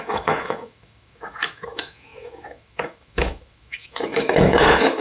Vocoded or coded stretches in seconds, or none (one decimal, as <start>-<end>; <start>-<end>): 0.0-5.0

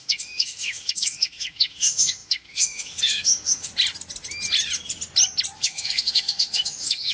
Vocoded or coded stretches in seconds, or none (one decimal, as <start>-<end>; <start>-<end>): 0.0-3.7; 5.6-7.1

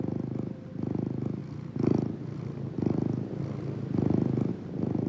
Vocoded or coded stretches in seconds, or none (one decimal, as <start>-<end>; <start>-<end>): none

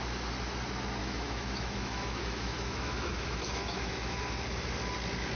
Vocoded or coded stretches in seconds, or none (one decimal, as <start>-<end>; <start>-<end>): 1.0-4.2